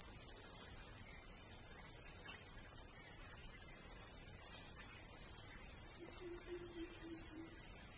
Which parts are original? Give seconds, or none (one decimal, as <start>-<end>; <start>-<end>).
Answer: 0.0-2.5; 7.4-8.0

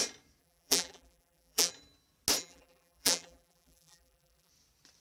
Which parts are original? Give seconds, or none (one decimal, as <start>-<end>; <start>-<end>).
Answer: 0.0-0.4; 1.7-2.4; 4.5-5.0

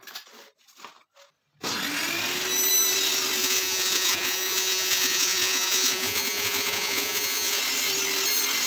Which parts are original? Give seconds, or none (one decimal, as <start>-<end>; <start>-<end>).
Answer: 0.0-3.4; 7.6-8.7

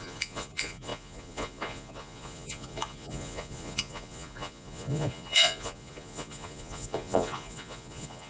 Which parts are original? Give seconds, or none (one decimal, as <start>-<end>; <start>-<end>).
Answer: none